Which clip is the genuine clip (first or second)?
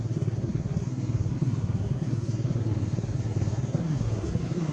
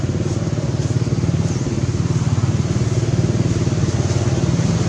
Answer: second